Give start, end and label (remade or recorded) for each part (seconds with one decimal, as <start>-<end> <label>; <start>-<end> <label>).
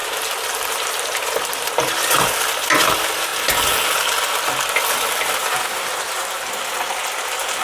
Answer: 0.0-2.4 remade; 2.4-7.6 recorded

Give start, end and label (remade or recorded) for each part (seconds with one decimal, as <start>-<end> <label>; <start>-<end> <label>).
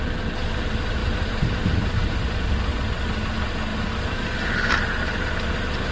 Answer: 0.0-1.0 recorded; 1.0-2.4 remade; 2.4-3.7 recorded; 3.7-5.3 remade; 5.3-5.9 recorded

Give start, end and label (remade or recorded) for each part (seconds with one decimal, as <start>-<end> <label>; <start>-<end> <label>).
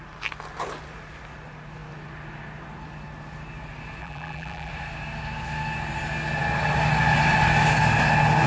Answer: 0.0-4.0 recorded; 4.0-4.7 remade; 4.7-8.5 recorded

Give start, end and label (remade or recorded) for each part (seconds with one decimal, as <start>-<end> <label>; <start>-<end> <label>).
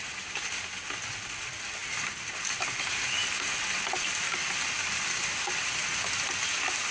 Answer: 0.0-6.9 recorded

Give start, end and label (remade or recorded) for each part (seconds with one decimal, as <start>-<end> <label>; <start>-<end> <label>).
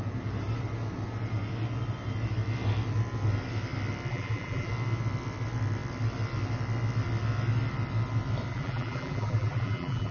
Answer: 0.0-4.1 recorded; 4.1-4.7 remade; 4.7-8.5 recorded; 8.5-10.1 remade